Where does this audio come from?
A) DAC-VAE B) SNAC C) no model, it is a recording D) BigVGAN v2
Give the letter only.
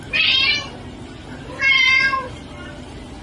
C